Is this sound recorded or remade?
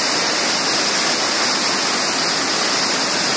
recorded